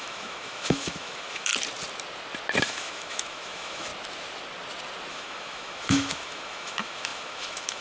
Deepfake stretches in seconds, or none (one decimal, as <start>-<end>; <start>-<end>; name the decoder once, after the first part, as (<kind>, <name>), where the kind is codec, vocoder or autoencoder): 0.0-1.5 (autoencoder, DAC-VAE); 2.6-3.9; 5.1-7.8